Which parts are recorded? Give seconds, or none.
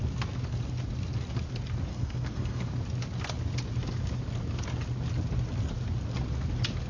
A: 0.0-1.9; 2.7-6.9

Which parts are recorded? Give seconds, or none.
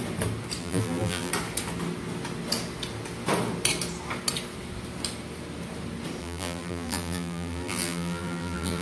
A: 0.0-0.6; 1.3-6.2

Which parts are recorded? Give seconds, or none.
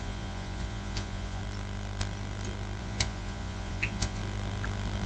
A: 1.4-2.8; 4.2-5.1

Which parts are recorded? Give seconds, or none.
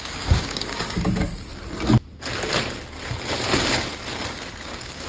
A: 1.5-4.6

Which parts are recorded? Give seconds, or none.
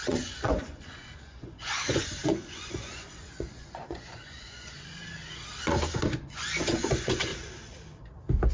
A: 5.0-5.6; 7.3-8.5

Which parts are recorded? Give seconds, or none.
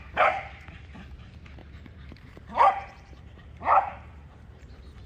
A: 0.0-1.6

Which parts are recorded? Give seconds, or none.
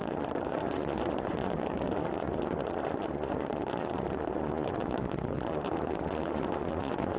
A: none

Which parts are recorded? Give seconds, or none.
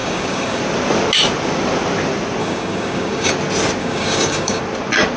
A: 0.6-2.4; 3.3-3.8; 4.6-5.2